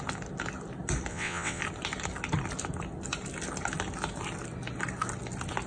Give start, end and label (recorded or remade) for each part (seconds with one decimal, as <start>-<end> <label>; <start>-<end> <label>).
0.0-1.1 recorded; 1.1-1.6 remade; 1.6-5.7 recorded